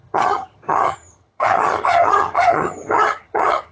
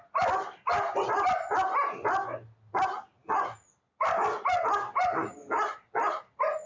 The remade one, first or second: first